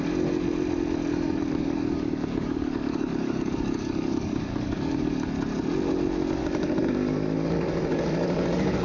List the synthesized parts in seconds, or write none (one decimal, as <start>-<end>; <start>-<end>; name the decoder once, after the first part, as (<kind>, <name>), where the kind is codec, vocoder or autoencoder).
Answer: 1.1-5.3 (codec, DAC); 6.4-8.8